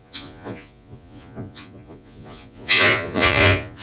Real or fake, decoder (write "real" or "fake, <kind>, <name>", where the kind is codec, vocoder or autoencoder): fake, vocoder, Vocos